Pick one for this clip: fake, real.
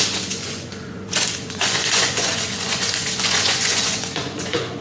fake